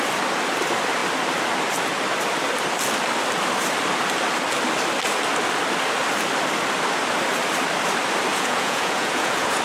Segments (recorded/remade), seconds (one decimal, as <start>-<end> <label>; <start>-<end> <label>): 0.0-8.3 recorded; 8.3-9.6 remade